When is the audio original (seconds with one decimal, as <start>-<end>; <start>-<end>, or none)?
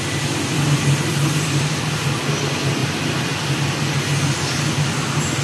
0.0-5.4